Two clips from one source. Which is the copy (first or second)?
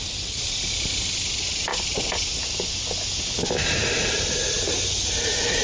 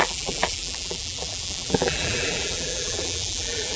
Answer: second